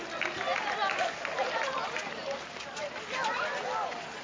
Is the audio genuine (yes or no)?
yes